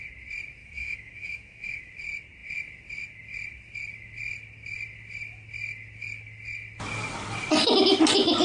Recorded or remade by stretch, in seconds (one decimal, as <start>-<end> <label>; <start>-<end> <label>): 0.0-0.6 recorded; 0.6-1.9 remade; 1.9-8.4 recorded